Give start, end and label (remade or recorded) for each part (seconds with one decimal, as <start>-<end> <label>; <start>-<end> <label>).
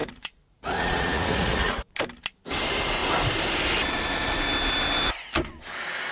0.0-1.9 remade; 1.9-6.1 recorded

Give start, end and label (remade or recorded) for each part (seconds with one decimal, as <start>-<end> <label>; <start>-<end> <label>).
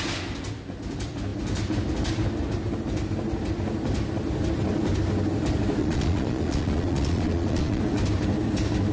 0.0-5.8 recorded; 5.8-7.8 remade; 7.8-8.9 recorded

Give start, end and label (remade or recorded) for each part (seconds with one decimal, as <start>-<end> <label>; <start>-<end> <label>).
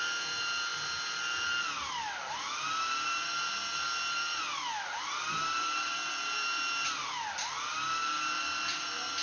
0.0-9.2 recorded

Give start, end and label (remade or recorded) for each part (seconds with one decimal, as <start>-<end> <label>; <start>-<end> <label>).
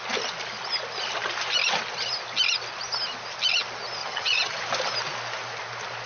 0.0-4.0 recorded; 4.0-4.6 remade; 4.6-6.1 recorded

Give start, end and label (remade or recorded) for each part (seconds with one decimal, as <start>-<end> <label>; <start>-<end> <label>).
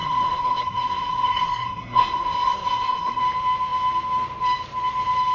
0.0-3.2 remade; 3.2-5.3 recorded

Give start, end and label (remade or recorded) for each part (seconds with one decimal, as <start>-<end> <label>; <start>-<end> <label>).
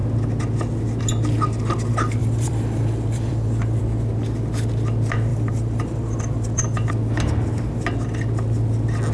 0.0-2.2 recorded; 2.2-3.8 remade; 3.8-5.3 recorded; 5.3-6.9 remade; 6.9-9.1 recorded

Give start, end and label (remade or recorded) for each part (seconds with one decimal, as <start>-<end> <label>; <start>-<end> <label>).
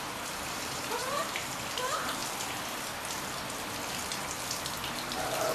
0.0-2.2 remade; 2.2-4.9 recorded; 4.9-5.5 remade